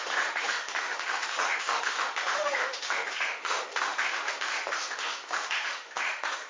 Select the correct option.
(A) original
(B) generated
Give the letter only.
B